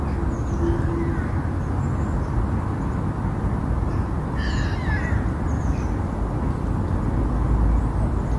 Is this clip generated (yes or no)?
no